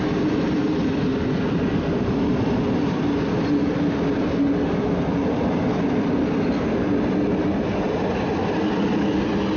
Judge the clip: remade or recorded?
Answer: recorded